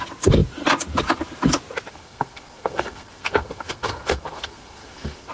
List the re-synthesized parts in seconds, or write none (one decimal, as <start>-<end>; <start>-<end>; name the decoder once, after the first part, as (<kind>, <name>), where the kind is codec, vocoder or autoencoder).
1.9-5.3 (codec, SNAC)